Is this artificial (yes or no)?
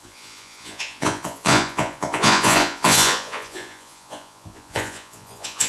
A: yes